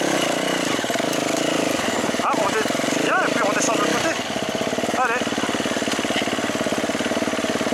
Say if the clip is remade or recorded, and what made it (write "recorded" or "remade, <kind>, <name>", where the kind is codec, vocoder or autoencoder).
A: recorded